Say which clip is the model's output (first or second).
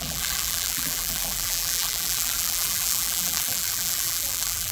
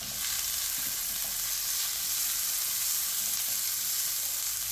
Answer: first